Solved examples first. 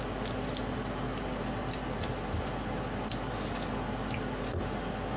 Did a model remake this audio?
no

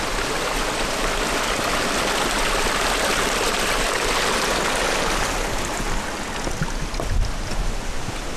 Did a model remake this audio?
no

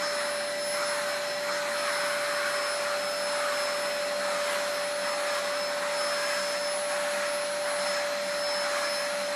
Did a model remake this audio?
no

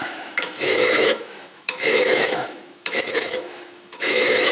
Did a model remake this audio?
yes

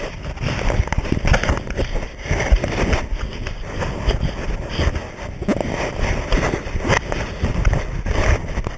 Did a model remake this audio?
no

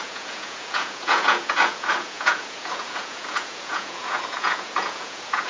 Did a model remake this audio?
yes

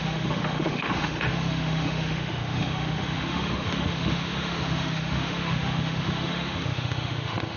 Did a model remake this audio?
yes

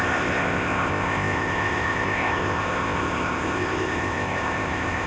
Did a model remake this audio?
yes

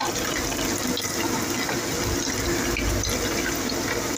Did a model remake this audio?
no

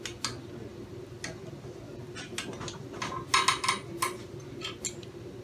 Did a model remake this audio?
no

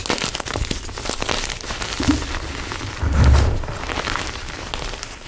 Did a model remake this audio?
no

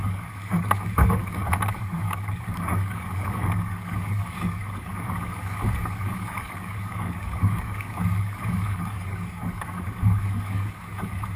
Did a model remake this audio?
yes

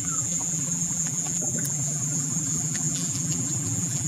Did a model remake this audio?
yes